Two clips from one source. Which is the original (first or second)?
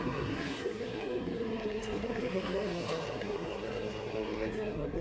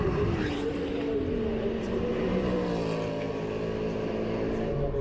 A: second